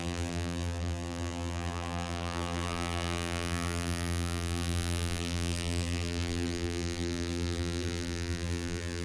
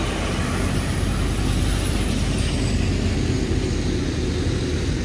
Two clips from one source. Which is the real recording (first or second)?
second